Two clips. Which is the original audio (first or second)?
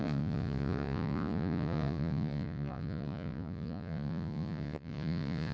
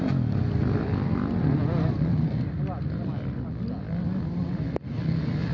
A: second